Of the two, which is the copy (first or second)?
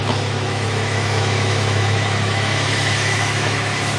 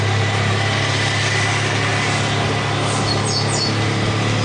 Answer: first